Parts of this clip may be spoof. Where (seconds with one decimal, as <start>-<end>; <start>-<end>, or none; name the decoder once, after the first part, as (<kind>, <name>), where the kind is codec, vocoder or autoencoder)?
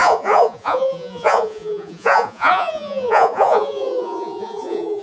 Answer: 0.0-5.0 (vocoder, Vocos)